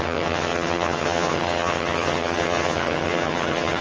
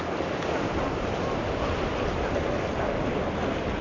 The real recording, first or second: second